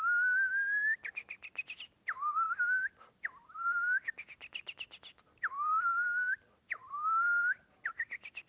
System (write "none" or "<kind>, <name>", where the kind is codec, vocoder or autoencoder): none